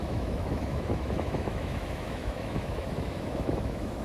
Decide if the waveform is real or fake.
fake